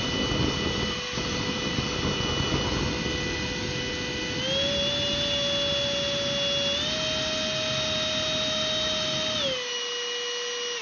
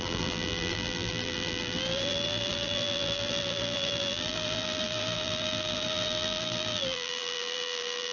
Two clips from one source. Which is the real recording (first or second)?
first